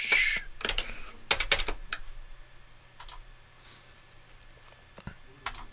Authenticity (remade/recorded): recorded